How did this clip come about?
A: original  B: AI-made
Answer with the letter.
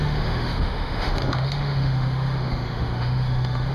B